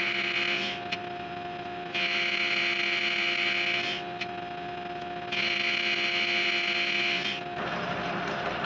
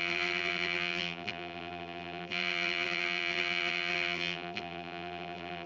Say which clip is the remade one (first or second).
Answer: second